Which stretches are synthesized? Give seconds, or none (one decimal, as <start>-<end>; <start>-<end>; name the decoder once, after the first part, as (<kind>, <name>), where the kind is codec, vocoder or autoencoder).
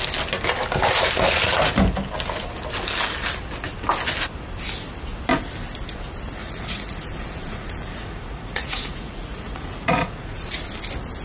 6.4-10.6 (vocoder, Vocos)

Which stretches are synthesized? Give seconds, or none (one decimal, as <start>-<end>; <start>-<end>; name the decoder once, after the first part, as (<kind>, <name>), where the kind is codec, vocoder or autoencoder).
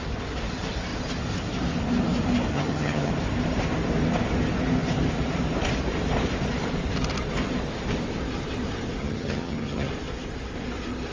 2.5-3.1 (vocoder, HiFi-GAN); 9.0-9.9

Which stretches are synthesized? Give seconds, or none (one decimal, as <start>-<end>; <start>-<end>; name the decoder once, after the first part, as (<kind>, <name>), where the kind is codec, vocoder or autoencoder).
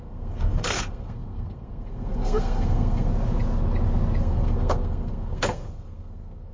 0.0-3.1 (codec, SNAC); 4.2-6.5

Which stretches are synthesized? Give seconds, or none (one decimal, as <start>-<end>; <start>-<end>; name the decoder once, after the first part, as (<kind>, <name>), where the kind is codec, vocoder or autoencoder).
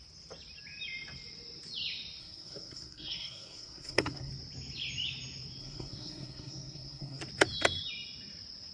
2.2-4.3 (codec, SNAC); 5.6-7.2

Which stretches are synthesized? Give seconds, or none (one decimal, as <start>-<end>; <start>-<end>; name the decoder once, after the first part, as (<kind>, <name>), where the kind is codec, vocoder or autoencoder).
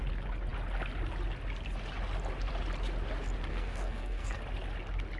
3.5-4.4 (codec, SNAC)